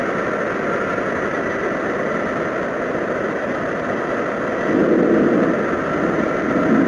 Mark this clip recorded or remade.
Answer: recorded